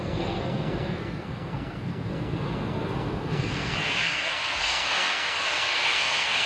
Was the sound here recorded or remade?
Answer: remade